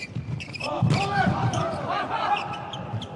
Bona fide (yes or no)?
yes